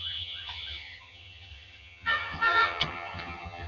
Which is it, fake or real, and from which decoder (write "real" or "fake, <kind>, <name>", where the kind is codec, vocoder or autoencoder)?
fake, vocoder, HiFi-GAN